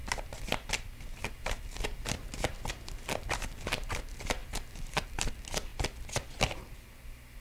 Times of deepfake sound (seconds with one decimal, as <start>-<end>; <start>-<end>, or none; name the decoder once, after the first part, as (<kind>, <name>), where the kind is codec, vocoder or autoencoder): none